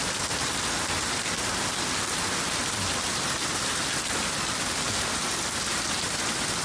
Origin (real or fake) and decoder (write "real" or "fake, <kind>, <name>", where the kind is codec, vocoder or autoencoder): real